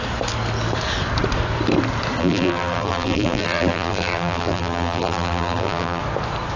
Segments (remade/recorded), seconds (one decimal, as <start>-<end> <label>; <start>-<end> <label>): 0.0-2.2 recorded; 2.2-6.0 remade; 6.0-6.6 recorded